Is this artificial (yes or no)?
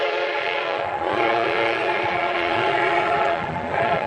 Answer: yes